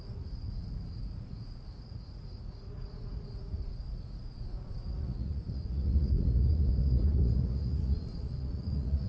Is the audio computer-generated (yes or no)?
yes